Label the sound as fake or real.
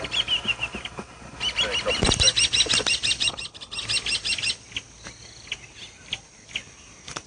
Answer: real